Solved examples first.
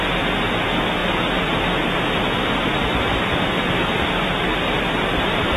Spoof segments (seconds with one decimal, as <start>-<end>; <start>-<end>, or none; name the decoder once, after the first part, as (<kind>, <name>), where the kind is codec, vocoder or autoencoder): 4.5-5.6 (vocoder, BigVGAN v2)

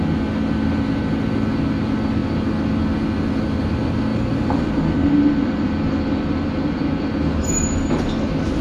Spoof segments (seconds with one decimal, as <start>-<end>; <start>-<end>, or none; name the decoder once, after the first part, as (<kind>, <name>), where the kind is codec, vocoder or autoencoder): 4.1-6.0 (vocoder, BigVGAN v2)

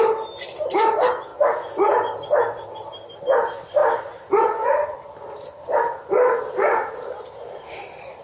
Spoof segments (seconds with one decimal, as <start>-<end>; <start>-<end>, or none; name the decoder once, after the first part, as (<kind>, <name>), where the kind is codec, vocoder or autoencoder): 0.0-8.2 (vocoder, BigVGAN v2)

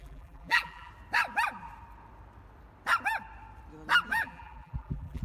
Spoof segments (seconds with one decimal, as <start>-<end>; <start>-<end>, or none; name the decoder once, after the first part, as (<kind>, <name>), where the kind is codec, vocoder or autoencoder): 0.0-0.9 (vocoder, BigVGAN v2); 4.1-5.2